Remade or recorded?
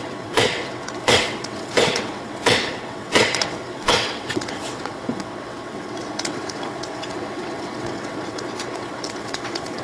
remade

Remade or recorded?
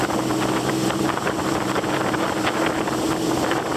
remade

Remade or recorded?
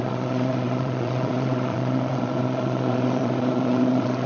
remade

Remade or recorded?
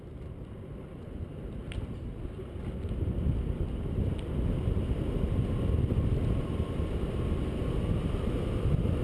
recorded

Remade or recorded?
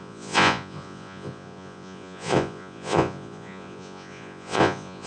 remade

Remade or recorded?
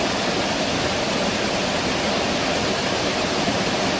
recorded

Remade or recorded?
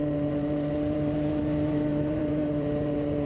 remade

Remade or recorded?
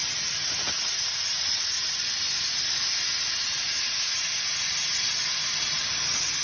recorded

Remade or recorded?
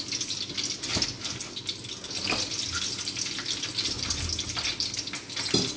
recorded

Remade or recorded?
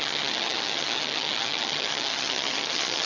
remade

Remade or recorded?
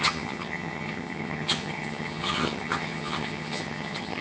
remade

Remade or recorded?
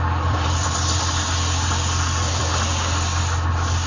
recorded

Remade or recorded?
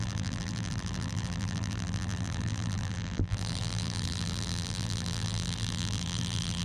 remade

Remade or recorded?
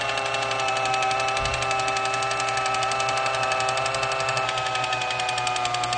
recorded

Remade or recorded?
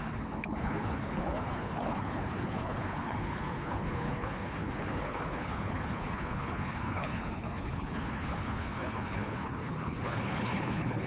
remade